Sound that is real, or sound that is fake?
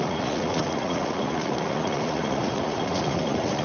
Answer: fake